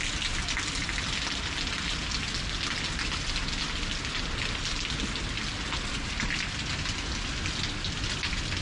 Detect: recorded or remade recorded